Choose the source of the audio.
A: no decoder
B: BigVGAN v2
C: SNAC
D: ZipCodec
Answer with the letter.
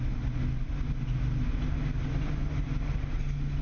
A